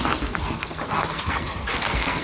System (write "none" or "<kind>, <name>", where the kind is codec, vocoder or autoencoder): codec, SNAC